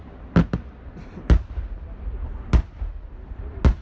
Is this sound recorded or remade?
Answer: recorded